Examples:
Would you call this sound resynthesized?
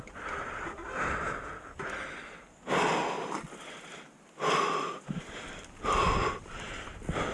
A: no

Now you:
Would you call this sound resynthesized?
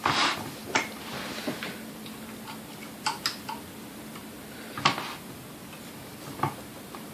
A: yes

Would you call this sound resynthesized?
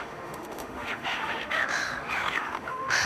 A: yes